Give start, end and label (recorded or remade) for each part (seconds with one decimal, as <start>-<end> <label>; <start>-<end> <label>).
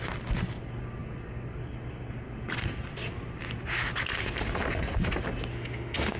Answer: 0.0-5.5 recorded; 5.5-6.2 remade